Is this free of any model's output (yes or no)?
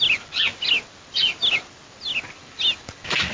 yes